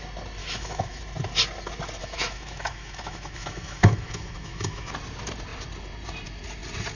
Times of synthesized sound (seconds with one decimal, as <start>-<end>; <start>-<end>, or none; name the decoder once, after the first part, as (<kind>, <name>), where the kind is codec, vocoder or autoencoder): 0.4-1.0 (autoencoder, DAC-VAE); 2.0-4.9